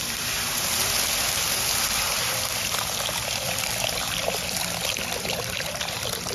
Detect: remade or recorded remade